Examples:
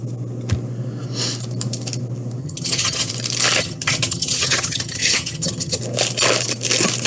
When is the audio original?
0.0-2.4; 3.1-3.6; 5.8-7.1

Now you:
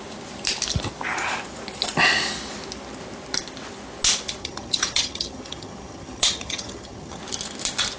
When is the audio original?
0.0-4.4; 7.2-8.0

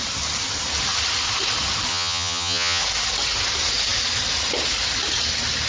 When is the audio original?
0.0-1.9; 2.8-5.7